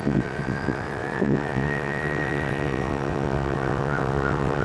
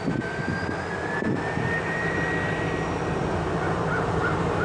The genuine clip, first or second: second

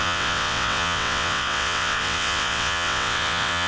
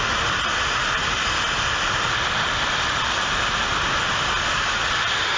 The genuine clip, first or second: second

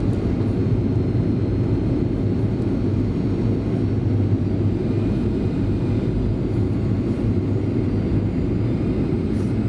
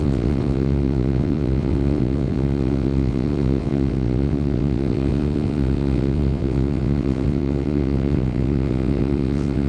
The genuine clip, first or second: first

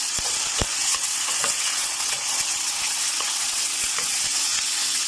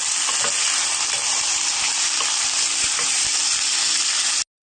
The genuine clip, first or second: second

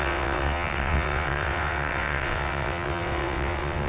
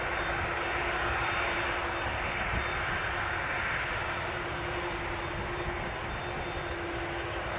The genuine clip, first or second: second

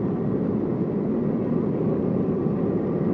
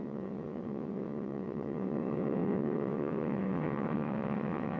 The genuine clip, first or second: first